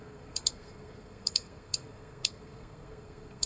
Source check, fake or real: fake